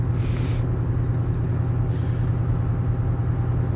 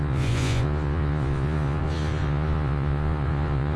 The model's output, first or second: second